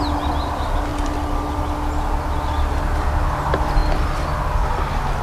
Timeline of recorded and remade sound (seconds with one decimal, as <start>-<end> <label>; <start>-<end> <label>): 0.0-5.2 recorded